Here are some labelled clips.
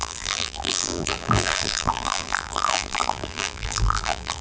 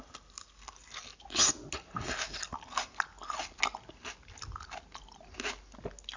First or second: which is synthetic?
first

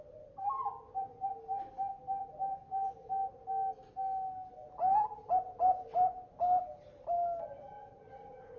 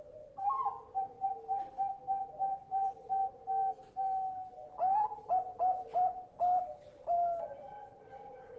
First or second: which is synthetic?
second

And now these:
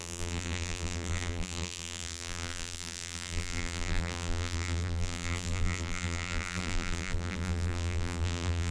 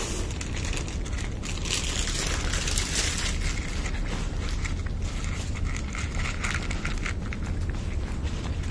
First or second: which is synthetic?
first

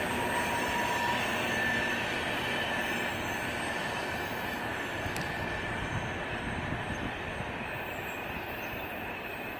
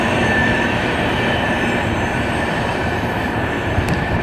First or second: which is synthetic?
second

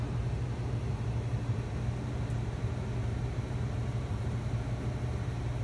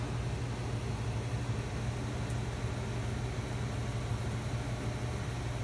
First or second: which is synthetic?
first